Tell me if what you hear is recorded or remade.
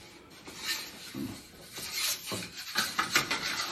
recorded